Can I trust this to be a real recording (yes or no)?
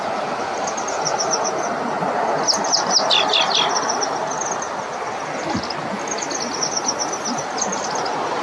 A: yes